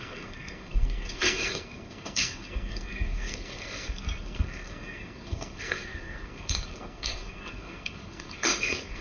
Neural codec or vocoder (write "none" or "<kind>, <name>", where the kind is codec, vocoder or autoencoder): codec, SNAC